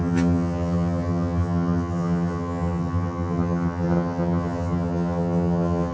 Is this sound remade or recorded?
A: remade